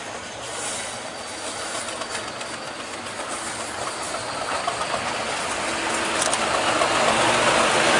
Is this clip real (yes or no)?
yes